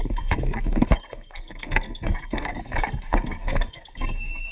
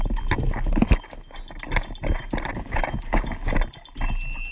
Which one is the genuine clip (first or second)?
second